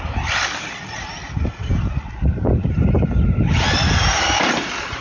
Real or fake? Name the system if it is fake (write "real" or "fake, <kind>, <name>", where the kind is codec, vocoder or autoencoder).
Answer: real